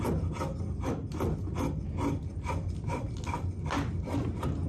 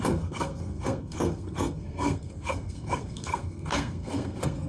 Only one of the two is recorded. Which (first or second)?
first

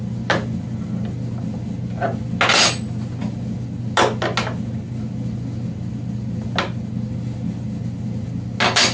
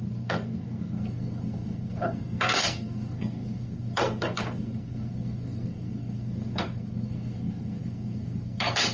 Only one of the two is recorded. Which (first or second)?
first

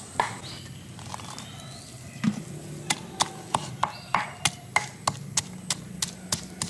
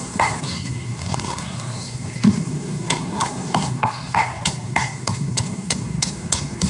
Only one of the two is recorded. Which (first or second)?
first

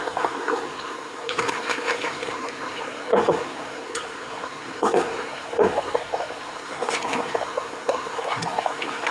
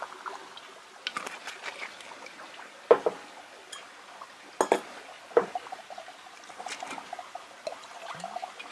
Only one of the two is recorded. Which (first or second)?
second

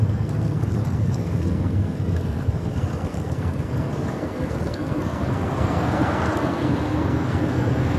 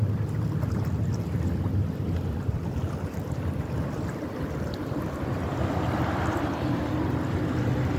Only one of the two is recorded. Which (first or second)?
second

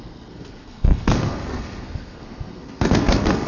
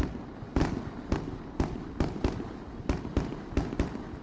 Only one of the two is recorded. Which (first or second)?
second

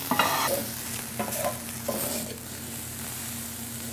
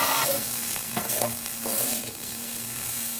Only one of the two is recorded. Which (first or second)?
first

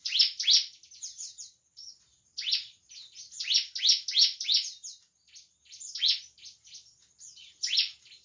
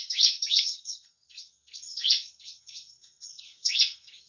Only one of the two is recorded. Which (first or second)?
first